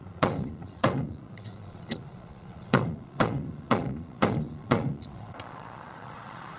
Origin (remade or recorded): remade